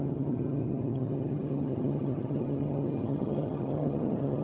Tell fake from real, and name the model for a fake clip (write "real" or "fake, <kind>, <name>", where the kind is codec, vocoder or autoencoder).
fake, vocoder, HiFi-GAN